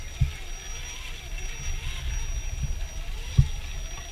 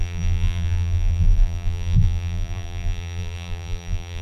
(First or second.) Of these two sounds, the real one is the first